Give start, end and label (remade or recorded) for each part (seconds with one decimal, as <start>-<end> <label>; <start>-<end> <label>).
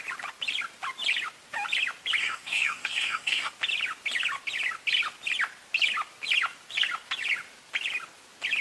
0.0-2.2 recorded; 2.2-3.5 remade; 3.5-8.6 recorded